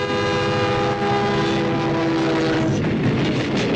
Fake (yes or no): no